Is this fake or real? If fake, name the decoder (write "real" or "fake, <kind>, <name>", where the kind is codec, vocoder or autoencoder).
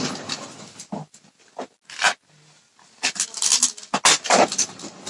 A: real